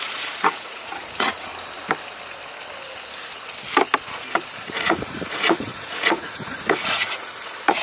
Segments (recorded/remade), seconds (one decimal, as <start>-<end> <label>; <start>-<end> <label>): 0.0-1.5 remade; 1.5-4.6 recorded; 4.6-7.8 remade